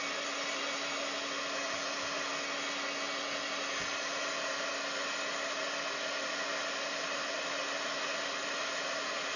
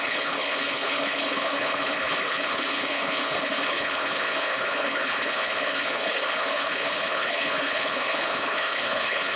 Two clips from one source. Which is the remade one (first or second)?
second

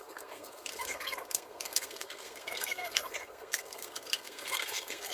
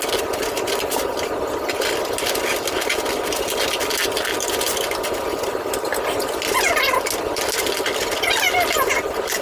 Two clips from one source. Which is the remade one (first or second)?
first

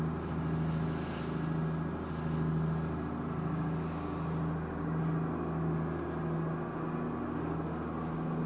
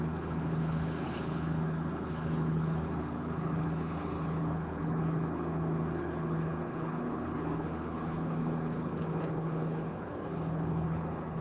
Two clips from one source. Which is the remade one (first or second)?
second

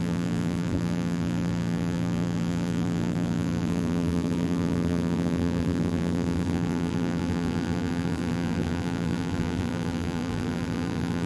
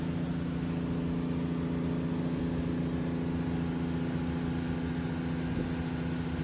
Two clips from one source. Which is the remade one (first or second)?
first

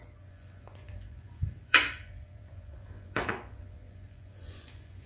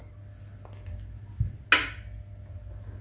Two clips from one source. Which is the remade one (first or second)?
first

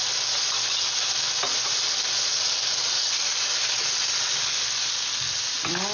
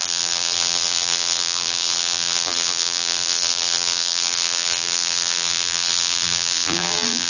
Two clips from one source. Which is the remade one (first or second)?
second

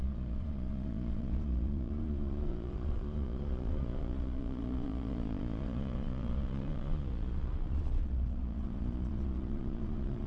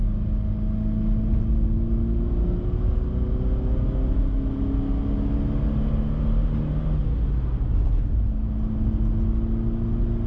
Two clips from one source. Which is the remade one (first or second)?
first